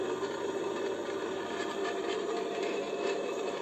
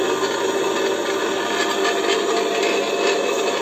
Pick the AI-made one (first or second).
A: first